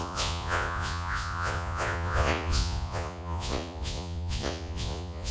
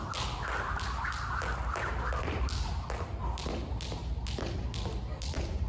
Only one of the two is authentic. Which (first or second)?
second